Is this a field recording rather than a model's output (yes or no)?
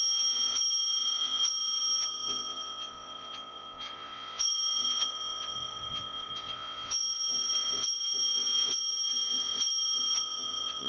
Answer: no